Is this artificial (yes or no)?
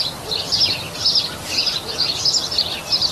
no